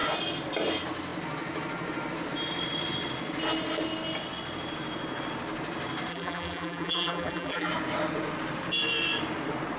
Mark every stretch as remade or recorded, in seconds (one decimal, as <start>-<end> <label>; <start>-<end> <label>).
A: 0.0-6.1 recorded; 6.1-7.7 remade; 7.7-9.8 recorded